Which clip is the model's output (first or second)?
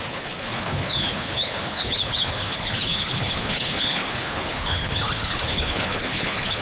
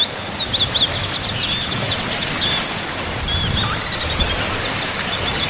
first